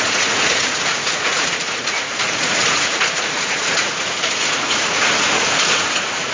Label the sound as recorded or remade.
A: remade